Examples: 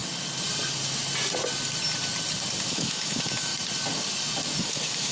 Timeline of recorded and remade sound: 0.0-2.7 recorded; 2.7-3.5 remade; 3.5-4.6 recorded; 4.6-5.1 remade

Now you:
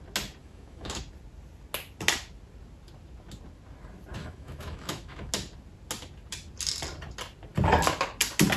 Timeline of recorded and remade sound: 0.0-0.4 recorded; 0.4-1.0 remade; 1.0-4.2 recorded; 4.2-5.3 remade; 5.3-8.6 recorded

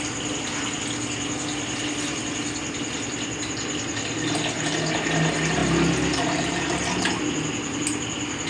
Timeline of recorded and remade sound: 0.0-8.5 recorded